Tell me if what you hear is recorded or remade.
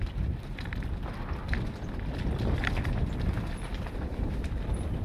recorded